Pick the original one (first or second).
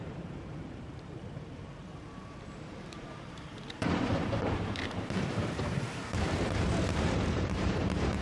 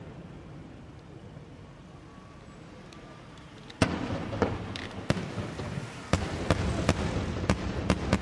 second